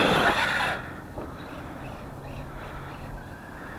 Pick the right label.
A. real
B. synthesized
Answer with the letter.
A